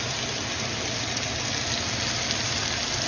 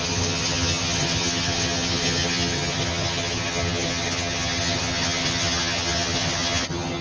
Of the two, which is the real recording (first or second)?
first